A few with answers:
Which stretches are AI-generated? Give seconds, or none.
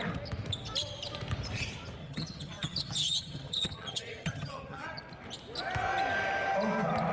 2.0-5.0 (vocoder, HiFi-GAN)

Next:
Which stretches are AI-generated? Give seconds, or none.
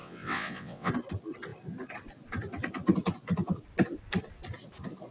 0.0-0.9 (vocoder, WaveNeXt)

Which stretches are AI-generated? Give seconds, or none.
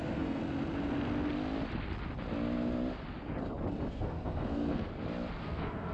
0.0-0.4 (codec, SNAC); 3.9-4.9; 5.4-5.9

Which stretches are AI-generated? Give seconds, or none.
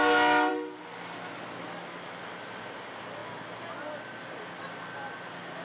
none